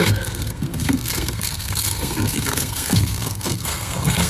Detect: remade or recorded remade